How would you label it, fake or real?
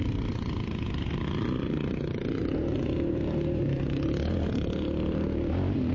real